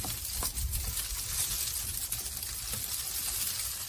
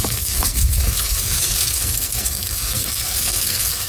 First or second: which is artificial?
second